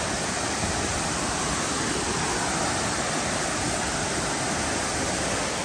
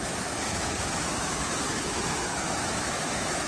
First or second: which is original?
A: first